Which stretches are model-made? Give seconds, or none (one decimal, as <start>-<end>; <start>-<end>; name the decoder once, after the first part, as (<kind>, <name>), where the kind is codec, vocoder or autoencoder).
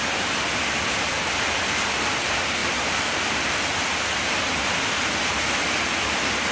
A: none